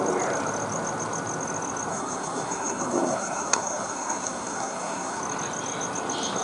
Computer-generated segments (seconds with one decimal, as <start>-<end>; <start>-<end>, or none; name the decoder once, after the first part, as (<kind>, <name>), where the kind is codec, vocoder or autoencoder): 1.9-5.2 (codec, SNAC)